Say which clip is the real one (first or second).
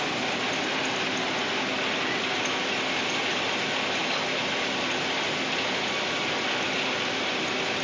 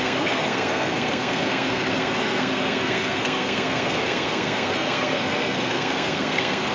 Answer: first